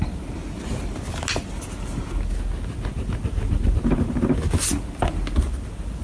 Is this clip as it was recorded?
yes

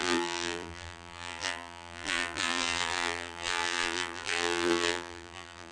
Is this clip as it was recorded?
no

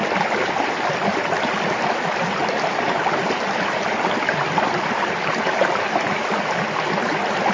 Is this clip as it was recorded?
yes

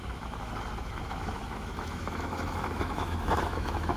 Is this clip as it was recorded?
no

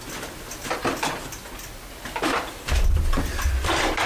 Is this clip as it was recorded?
yes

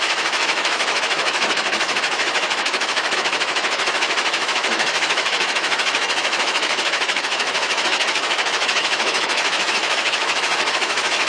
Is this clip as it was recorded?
no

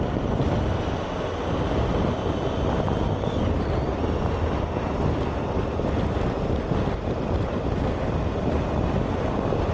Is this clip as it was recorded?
yes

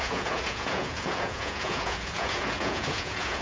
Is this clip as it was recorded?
no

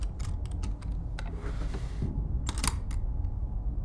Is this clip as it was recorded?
yes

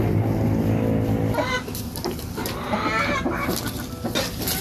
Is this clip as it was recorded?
yes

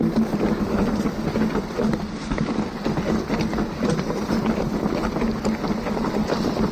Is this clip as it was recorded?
yes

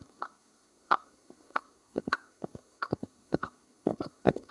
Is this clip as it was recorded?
no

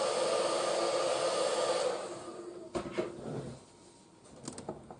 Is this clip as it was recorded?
yes